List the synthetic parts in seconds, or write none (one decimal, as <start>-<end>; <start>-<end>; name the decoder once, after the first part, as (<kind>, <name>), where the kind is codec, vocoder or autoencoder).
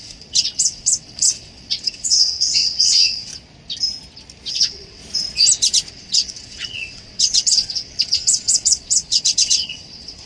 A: 0.0-3.3 (vocoder, WaveNeXt); 4.5-5.0; 5.9-10.3